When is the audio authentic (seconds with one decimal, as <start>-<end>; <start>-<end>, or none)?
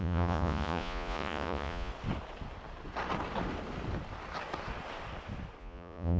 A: 1.9-5.6